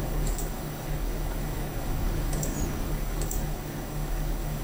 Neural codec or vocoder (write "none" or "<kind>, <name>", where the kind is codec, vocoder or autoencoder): codec, DAC